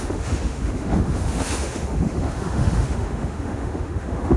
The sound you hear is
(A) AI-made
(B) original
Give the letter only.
A